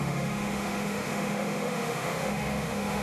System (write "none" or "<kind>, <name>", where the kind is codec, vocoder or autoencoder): autoencoder, DAC-VAE